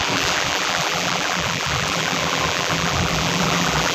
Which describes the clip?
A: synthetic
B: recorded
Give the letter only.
A